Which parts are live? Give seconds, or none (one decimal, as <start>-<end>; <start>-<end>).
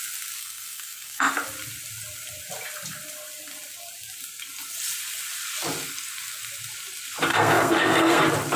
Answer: 0.0-0.4; 1.3-7.3; 8.2-8.6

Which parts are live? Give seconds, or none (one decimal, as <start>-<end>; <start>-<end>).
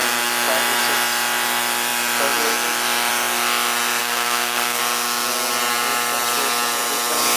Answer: 0.0-4.0; 4.8-7.4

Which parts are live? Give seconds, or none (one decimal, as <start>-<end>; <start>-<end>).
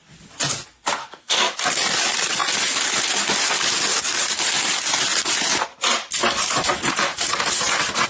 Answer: 0.0-1.0; 1.5-8.1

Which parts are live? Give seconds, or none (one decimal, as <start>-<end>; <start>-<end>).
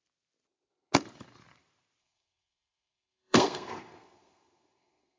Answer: 0.0-2.0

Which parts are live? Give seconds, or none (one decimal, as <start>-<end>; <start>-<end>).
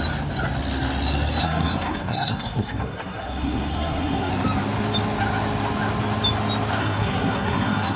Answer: 0.0-1.4; 4.3-6.8